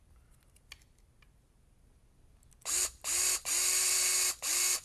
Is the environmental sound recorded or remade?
recorded